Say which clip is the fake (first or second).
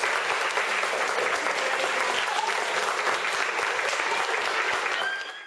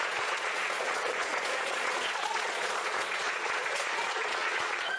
second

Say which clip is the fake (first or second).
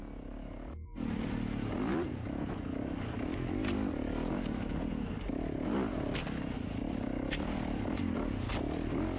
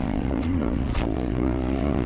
second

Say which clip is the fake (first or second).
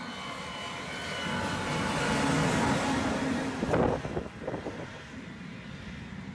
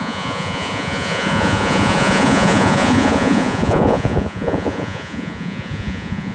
second